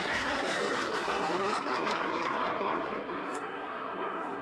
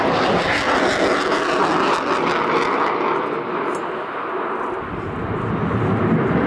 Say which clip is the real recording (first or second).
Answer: second